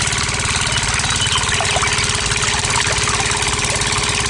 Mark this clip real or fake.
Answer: real